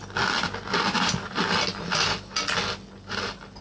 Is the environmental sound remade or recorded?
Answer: recorded